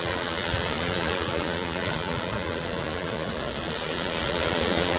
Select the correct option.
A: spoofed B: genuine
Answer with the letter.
A